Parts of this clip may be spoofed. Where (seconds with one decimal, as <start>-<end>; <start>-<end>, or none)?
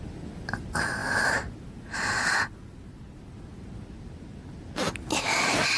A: none